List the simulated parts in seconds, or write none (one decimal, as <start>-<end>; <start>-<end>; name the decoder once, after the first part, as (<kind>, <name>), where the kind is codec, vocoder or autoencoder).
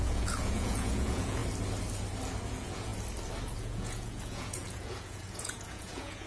0.0-1.4 (vocoder, Vocos); 2.5-2.9; 3.6-6.3